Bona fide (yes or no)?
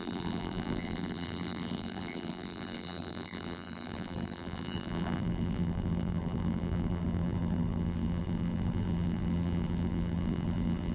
no